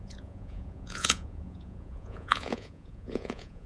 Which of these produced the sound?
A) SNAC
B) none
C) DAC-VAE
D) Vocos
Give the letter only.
D